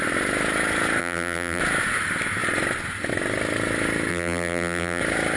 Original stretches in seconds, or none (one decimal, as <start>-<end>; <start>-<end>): 0.0-1.0; 1.6-4.1; 5.0-5.4